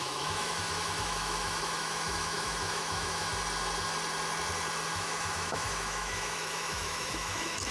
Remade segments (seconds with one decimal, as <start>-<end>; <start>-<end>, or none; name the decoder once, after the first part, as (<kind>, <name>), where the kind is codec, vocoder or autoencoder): 0.0-3.3 (autoencoder, DAC-VAE); 4.9-7.7